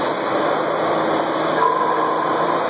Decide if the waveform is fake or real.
real